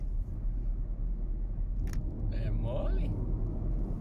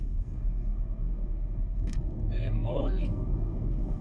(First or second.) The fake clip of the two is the second